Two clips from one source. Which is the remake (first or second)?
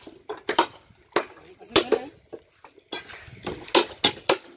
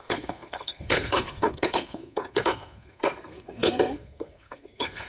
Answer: second